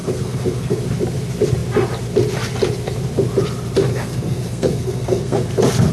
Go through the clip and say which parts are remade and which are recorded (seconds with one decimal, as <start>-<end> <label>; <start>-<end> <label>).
0.0-0.8 remade; 0.8-3.9 recorded; 3.9-5.5 remade; 5.5-5.9 recorded